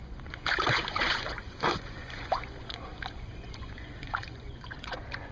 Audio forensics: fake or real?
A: fake